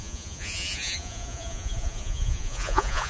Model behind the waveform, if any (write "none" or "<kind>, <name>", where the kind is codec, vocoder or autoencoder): vocoder, Vocos